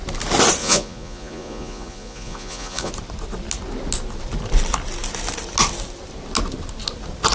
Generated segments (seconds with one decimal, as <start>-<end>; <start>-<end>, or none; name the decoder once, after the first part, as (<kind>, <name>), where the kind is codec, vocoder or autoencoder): 0.6-2.9 (vocoder, Vocos)